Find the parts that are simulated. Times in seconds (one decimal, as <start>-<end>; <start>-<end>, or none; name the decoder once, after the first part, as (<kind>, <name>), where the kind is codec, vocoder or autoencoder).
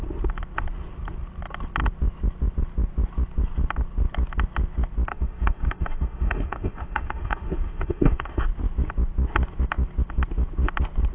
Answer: 5.1-8.4 (autoencoder, DAC-VAE)